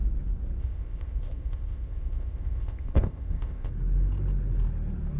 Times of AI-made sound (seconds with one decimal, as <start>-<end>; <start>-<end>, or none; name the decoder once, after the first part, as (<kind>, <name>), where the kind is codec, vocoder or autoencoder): 0.6-3.7 (codec, ZipCodec)